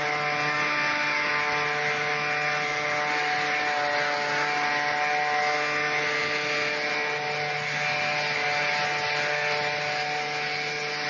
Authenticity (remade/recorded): recorded